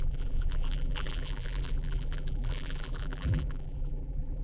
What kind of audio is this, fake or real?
fake